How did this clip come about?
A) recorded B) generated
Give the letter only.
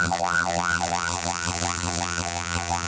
B